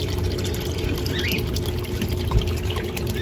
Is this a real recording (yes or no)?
no